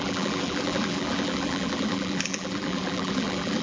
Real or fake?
fake